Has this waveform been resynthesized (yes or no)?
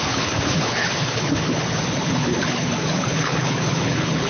yes